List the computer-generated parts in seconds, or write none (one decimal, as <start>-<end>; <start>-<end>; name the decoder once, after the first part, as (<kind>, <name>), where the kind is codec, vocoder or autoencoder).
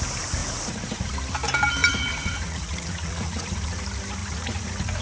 0.4-1.1 (vocoder, Vocos); 1.8-3.8; 4.2-5.0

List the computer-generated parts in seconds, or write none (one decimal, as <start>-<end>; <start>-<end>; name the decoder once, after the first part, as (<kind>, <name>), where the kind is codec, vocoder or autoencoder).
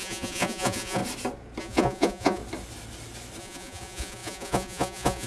0.0-1.0 (vocoder, Vocos); 1.6-2.4; 3.4-5.3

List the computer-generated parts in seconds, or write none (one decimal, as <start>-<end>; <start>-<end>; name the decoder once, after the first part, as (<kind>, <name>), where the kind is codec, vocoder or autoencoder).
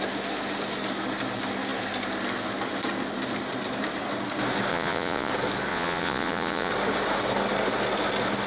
4.7-5.3 (vocoder, Vocos); 5.7-6.7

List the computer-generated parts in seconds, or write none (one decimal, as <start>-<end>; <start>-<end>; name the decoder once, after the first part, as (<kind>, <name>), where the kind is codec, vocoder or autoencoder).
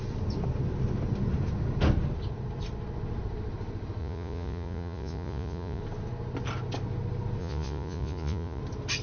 4.0-5.8 (vocoder, Vocos); 7.4-8.6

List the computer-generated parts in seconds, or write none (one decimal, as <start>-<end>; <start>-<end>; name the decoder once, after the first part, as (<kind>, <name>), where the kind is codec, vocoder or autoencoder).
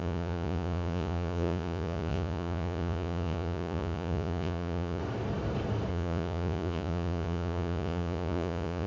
0.0-5.0 (vocoder, Vocos); 5.9-8.9